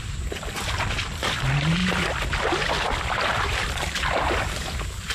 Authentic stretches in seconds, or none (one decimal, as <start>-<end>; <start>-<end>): 0.0-1.8; 2.7-5.1